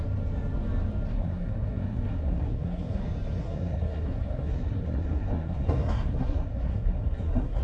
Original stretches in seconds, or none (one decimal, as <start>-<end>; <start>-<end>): 0.0-1.1; 3.0-3.4